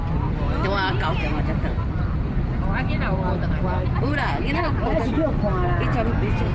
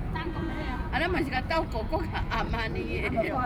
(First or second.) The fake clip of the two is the second